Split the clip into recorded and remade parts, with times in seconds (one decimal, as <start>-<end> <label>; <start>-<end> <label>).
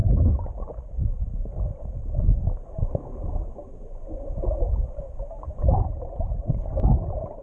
0.0-7.4 recorded